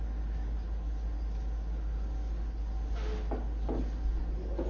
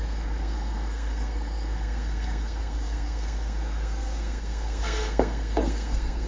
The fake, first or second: second